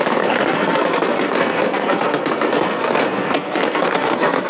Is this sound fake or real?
fake